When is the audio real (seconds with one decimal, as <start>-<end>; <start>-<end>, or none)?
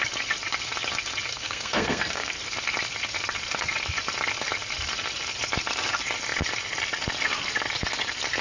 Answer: 0.0-1.3; 2.3-8.4